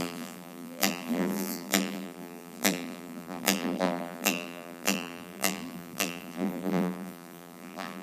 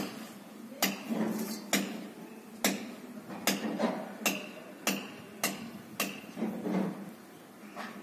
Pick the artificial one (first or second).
first